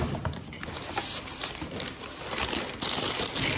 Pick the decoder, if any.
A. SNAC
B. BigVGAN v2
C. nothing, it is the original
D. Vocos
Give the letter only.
C